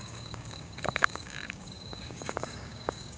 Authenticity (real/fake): fake